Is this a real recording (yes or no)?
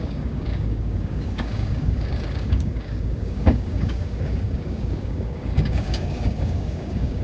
no